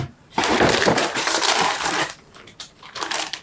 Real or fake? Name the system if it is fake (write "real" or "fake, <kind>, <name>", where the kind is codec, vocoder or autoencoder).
fake, vocoder, BigVGAN v2